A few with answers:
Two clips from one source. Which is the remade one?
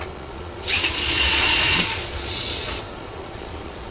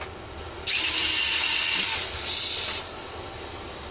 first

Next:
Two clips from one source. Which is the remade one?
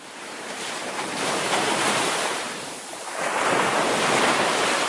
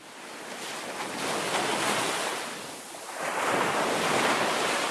first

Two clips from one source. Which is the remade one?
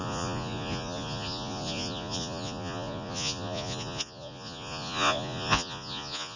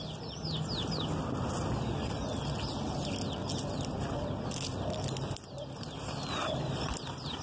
first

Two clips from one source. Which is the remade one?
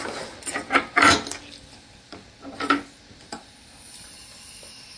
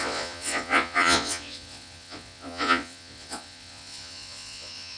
second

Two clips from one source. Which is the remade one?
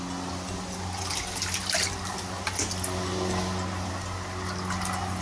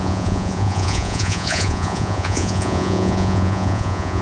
second